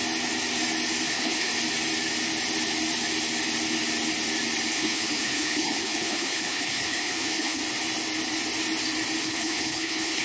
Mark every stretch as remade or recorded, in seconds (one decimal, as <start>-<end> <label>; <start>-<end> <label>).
0.0-1.1 recorded; 1.1-1.5 remade; 1.5-4.7 recorded; 4.7-7.6 remade; 7.6-9.2 recorded; 9.2-10.2 remade